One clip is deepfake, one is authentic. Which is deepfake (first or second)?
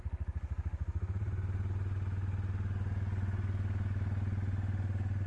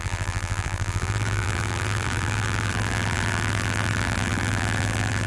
second